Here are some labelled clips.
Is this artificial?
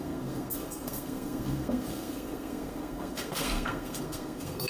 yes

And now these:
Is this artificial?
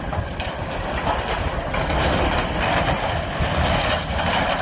no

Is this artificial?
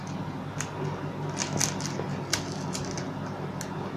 no